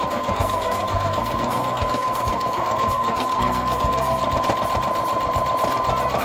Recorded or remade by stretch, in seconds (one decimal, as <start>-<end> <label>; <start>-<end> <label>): 0.0-4.2 remade; 4.2-6.2 recorded